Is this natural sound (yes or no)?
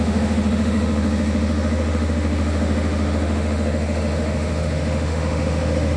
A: no